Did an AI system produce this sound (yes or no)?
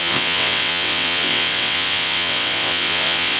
yes